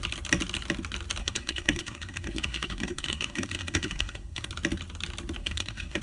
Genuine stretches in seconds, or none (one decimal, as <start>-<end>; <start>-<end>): 0.0-1.2; 4.5-5.4